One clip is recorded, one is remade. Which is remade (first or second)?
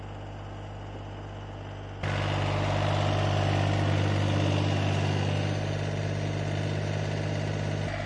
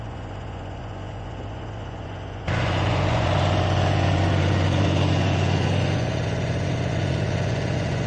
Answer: second